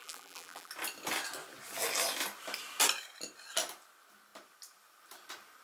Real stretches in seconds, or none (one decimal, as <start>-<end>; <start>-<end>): 0.7-5.6